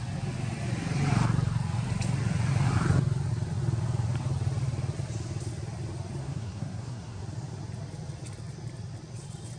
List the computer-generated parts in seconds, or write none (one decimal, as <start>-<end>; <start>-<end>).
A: 6.2-7.2